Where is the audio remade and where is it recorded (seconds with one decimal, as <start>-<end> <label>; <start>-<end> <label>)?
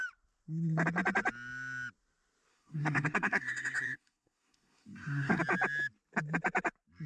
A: 0.0-2.5 recorded; 2.5-5.4 remade; 5.4-7.1 recorded